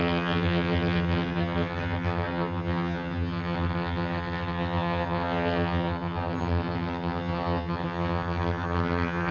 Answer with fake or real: fake